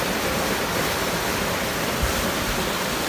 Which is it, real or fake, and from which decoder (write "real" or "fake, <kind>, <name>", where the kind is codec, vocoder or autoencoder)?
real